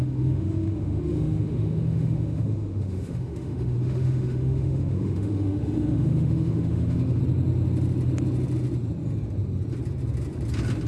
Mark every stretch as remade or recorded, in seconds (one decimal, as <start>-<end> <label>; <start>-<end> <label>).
0.0-7.2 remade; 7.2-10.9 recorded

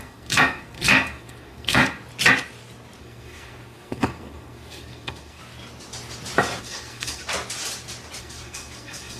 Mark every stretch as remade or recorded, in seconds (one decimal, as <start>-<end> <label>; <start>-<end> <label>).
0.0-1.8 remade; 1.8-3.0 recorded; 3.0-5.4 remade; 5.4-6.6 recorded; 6.6-7.2 remade; 7.2-8.2 recorded; 8.2-9.2 remade

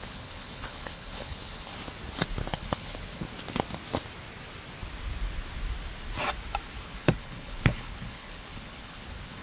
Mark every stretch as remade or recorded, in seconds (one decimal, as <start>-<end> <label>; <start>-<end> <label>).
0.0-1.7 remade; 1.7-2.5 recorded; 2.5-3.3 remade; 3.3-6.8 recorded; 6.8-9.4 remade

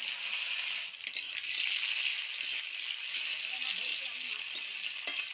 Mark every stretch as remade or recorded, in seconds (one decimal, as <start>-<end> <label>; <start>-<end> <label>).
0.0-5.3 recorded

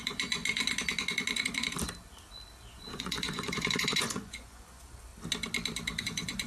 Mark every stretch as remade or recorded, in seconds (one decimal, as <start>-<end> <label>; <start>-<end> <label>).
0.0-0.4 remade; 0.4-2.7 recorded; 2.7-5.1 remade; 5.1-6.0 recorded; 6.0-6.5 remade

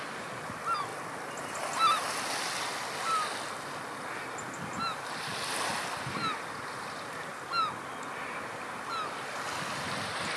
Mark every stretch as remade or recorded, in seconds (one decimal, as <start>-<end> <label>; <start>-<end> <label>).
0.0-10.4 recorded

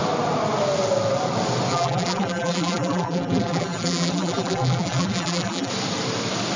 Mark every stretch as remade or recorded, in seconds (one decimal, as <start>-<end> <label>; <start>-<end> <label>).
0.0-1.7 recorded; 1.7-5.7 remade; 5.7-6.6 recorded